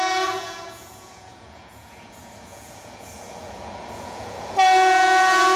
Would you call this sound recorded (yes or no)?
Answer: no